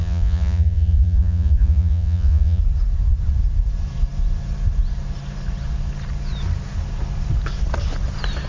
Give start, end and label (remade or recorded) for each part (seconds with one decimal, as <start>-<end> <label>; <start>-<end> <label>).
0.0-2.6 remade; 2.6-8.5 recorded